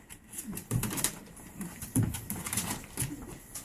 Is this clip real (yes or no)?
yes